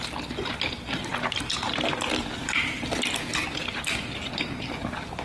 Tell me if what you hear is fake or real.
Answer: real